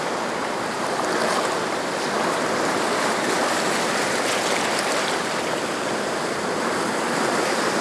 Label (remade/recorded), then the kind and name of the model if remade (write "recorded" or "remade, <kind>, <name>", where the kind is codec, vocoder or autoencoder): remade, vocoder, BigVGAN v2